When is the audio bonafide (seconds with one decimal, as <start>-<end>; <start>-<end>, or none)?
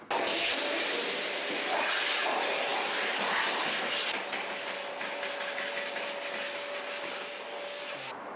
0.0-8.4